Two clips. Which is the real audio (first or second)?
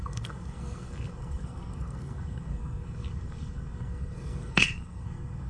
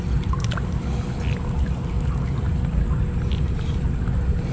second